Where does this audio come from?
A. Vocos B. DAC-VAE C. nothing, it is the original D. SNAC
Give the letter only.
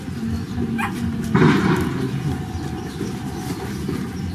C